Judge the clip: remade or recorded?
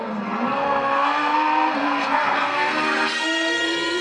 remade